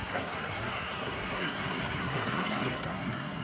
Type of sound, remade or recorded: remade